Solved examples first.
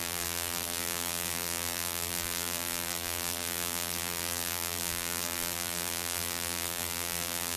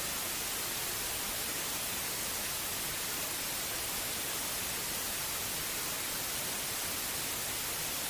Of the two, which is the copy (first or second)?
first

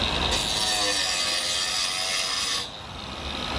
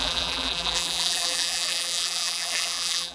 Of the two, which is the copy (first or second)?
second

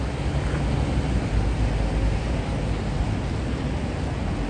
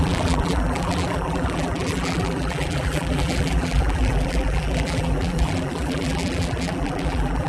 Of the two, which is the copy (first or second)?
second